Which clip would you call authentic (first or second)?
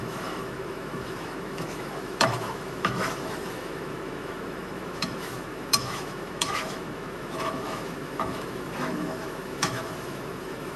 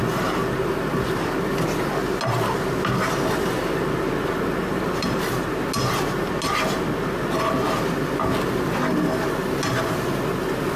second